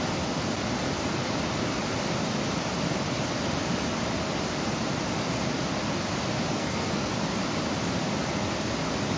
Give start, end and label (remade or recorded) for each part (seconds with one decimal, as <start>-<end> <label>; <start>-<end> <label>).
0.0-6.5 recorded; 6.5-7.1 remade; 7.1-9.2 recorded